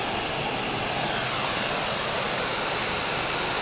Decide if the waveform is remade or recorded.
recorded